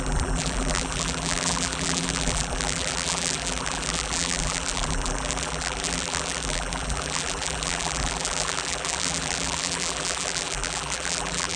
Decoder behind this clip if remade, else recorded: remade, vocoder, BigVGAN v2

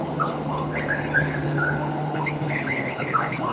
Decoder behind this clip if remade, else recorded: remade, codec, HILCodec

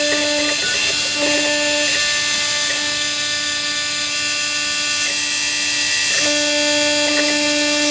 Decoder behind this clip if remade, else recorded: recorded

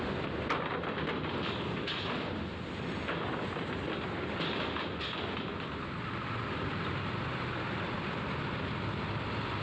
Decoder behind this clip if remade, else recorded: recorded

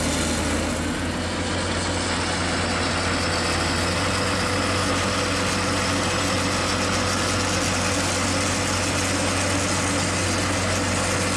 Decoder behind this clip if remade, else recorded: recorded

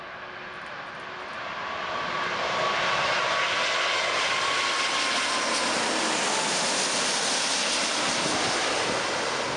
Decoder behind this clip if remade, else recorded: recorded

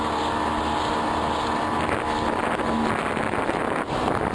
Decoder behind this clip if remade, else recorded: recorded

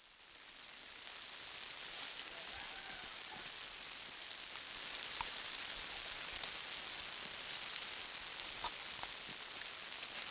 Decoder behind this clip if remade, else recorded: recorded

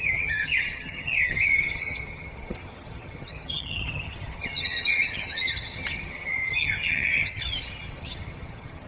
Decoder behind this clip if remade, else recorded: remade, vocoder, HiFi-GAN